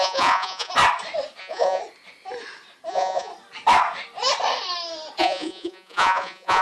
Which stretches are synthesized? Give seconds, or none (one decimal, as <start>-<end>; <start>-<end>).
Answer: 0.0-0.7; 1.4-1.8; 2.9-3.3; 5.2-6.6